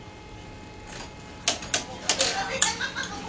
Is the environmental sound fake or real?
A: real